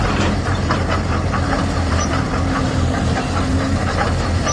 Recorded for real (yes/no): no